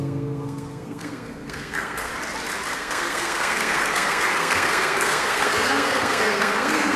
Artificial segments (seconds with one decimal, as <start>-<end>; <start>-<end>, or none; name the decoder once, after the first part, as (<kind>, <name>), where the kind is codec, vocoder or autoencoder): 0.0-2.1 (codec, SNAC); 2.7-7.0